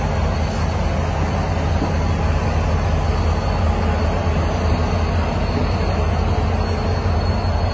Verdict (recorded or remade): recorded